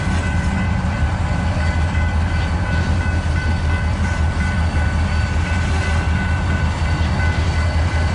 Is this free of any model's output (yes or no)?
no